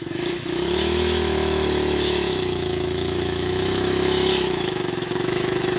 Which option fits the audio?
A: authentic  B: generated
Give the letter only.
B